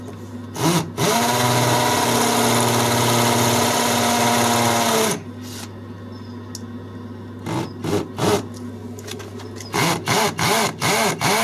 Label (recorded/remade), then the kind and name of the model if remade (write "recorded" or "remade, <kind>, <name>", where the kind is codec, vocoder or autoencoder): recorded